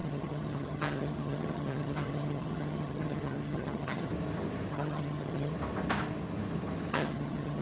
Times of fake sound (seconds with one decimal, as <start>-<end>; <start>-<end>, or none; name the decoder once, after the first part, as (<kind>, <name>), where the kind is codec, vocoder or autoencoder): 0.0-4.1 (vocoder, HiFi-GAN); 4.7-5.5; 6.9-7.6